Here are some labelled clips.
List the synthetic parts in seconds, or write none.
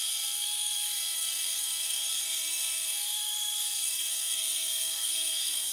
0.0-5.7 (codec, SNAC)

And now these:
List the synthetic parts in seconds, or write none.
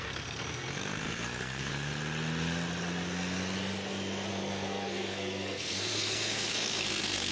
0.0-1.7 (codec, SNAC); 4.3-7.3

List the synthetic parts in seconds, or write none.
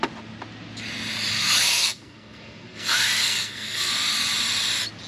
1.7-3.9 (codec, SNAC)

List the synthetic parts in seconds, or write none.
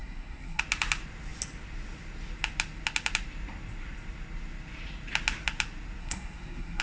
0.0-0.6 (codec, SNAC); 6.0-6.8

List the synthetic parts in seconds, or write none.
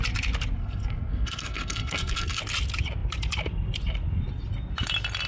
0.6-2.4 (codec, SNAC)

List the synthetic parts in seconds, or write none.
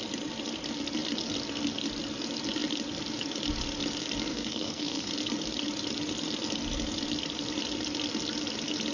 4.3-5.1 (codec, SNAC)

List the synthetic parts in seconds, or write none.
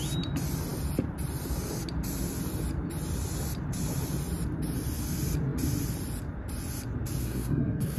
7.2-8.0 (codec, SNAC)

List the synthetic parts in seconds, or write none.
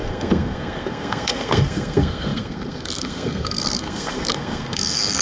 0.0-5.2 (codec, SNAC)